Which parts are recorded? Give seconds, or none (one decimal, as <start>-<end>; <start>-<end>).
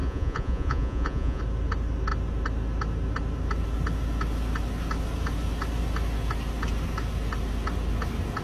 1.4-8.4